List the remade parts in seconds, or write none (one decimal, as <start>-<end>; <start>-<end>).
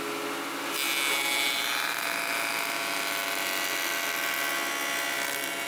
none